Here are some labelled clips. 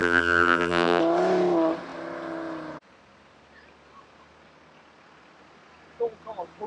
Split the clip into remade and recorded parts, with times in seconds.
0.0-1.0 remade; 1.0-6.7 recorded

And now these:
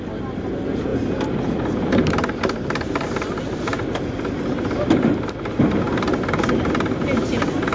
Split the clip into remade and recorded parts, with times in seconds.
0.0-7.7 recorded

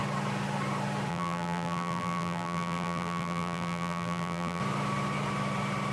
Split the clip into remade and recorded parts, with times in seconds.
0.0-1.1 recorded; 1.1-4.6 remade; 4.6-5.9 recorded

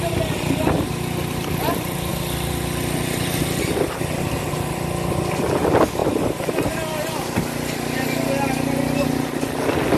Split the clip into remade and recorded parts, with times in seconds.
0.0-10.0 recorded

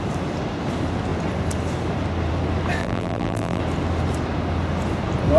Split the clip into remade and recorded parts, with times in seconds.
0.0-2.8 recorded; 2.8-3.6 remade; 3.6-5.4 recorded

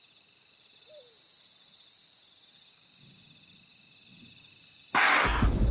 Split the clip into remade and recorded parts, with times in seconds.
0.0-4.1 recorded; 4.1-5.0 remade; 5.0-5.7 recorded